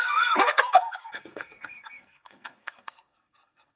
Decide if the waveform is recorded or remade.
remade